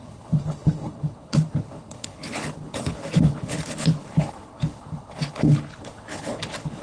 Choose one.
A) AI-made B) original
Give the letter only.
A